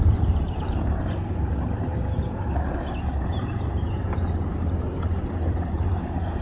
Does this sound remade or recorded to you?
remade